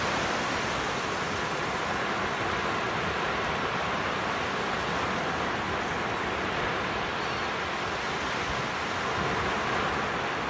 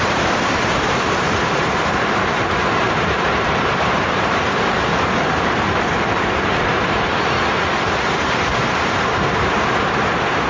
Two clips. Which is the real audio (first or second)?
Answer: first